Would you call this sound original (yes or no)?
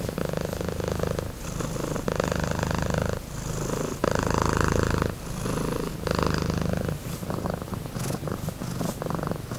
yes